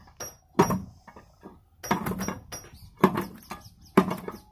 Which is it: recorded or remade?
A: recorded